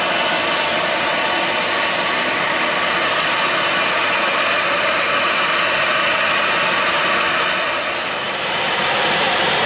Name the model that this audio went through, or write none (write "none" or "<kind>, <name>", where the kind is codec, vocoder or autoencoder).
none